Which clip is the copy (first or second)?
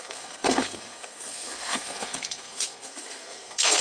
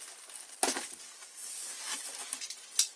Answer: first